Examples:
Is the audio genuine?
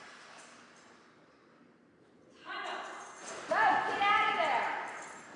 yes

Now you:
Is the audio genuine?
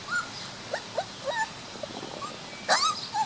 yes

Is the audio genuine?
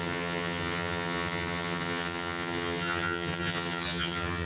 no